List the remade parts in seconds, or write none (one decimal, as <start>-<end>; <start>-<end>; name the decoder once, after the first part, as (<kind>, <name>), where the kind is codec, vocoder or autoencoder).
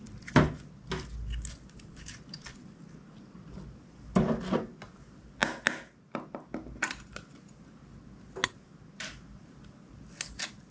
none